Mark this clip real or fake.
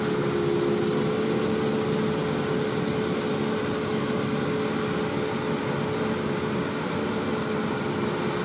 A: real